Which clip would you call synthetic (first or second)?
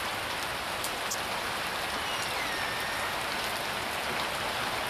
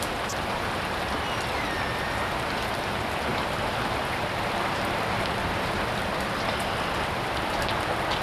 second